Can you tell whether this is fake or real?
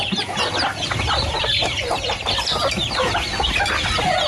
real